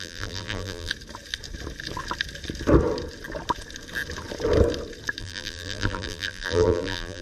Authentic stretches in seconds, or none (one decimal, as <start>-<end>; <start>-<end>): 0.9-5.2